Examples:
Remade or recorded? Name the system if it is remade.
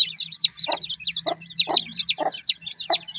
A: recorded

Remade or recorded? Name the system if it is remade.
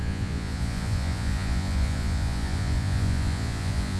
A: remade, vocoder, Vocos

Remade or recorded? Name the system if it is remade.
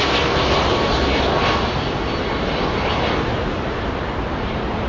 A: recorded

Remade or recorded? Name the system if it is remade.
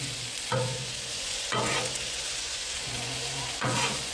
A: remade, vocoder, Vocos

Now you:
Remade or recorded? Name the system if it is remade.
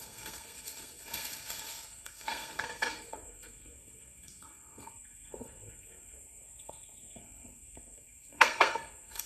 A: remade, codec, SNAC